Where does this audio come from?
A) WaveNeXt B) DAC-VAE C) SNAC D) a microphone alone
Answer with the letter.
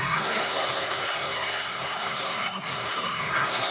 C